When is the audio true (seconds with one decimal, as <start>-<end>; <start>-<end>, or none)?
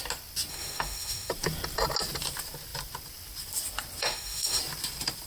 0.0-0.5; 1.3-4.0; 4.6-5.3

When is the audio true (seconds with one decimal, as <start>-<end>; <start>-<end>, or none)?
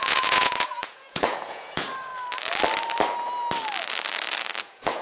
2.1-4.6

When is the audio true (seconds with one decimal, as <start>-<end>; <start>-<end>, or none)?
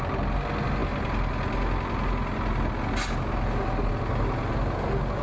0.0-5.2